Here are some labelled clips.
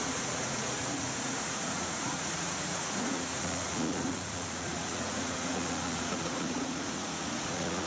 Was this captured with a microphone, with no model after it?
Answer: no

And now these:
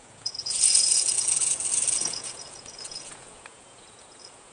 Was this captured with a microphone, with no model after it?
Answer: no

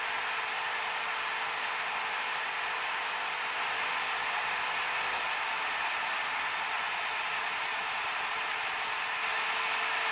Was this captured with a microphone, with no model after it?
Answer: yes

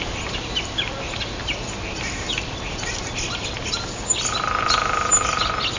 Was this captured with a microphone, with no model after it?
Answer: yes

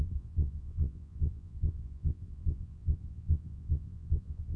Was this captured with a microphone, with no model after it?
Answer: no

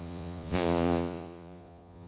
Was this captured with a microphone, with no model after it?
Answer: no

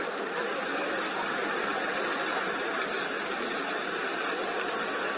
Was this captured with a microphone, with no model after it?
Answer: yes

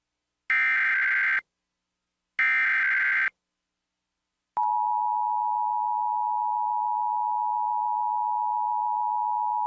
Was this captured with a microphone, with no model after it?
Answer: yes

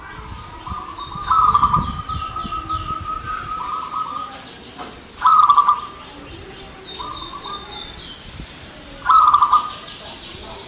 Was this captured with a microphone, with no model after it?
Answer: yes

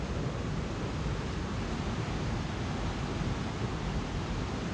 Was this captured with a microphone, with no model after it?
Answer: yes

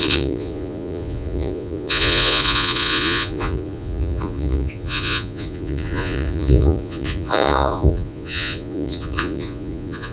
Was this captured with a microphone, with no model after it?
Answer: no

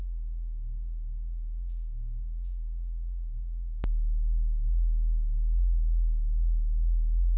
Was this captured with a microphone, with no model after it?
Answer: yes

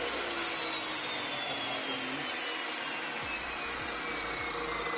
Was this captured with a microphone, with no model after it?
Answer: yes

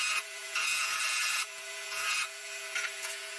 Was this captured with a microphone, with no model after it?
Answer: no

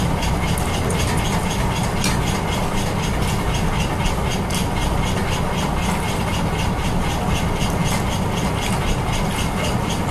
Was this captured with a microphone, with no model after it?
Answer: yes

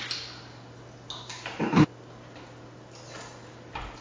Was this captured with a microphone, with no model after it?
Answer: yes